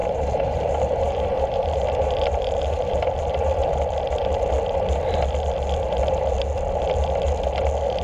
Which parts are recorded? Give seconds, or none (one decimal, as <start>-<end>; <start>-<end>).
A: 3.2-8.0